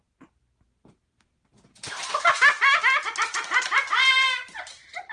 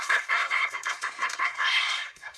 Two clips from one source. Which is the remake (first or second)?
second